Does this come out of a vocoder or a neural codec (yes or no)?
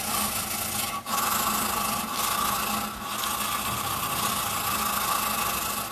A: no